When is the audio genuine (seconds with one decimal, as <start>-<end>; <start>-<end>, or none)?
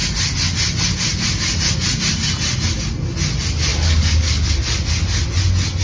0.0-3.7; 4.5-5.8